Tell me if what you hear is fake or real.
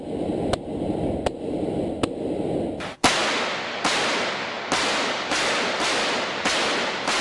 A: real